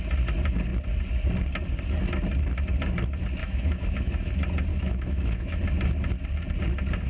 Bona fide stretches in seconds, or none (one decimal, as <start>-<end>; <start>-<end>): 0.0-3.4; 4.3-4.7; 5.6-7.1